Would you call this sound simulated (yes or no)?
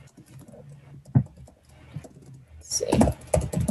no